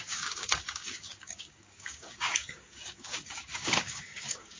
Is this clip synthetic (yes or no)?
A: yes